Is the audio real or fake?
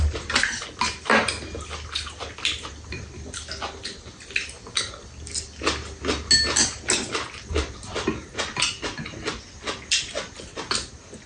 real